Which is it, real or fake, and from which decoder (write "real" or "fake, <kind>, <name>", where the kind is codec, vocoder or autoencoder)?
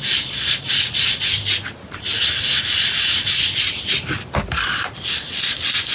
real